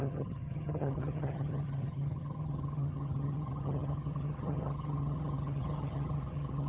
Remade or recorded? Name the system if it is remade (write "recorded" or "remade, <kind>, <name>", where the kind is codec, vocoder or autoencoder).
remade, vocoder, HiFi-GAN